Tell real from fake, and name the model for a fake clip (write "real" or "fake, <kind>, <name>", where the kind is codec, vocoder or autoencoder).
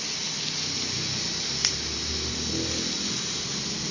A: real